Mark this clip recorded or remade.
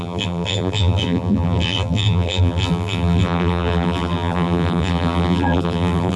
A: remade